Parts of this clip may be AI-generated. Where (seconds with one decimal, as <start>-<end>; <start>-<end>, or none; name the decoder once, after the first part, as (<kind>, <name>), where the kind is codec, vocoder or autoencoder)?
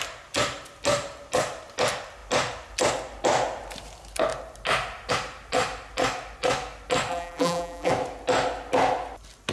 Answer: 7.1-7.9 (vocoder, BigVGAN v2)